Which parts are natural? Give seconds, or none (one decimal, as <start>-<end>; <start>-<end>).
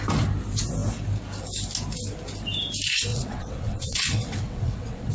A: 0.0-3.1